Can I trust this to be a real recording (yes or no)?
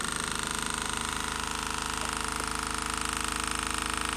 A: yes